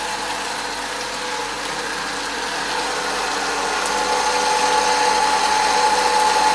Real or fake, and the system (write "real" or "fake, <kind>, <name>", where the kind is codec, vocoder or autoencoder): real